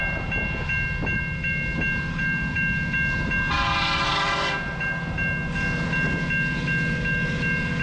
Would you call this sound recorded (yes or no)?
yes